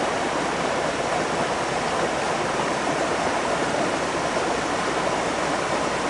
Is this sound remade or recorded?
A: recorded